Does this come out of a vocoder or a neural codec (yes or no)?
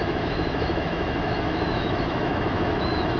yes